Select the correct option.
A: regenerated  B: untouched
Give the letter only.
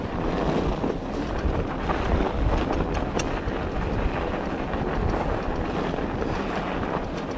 B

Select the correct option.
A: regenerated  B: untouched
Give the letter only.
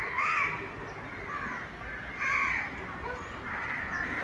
B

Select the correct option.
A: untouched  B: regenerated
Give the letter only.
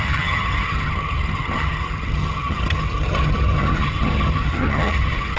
B